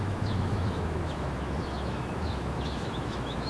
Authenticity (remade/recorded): remade